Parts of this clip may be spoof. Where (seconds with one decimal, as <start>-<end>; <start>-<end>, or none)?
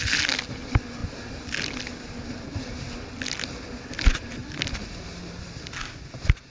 none